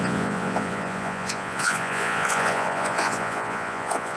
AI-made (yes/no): yes